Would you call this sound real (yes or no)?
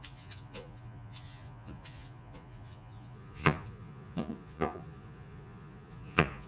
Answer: no